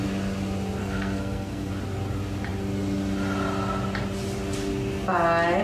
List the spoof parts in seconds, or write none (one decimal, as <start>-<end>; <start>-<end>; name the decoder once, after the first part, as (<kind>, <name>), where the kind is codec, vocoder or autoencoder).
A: 0.8-1.7 (codec, SNAC)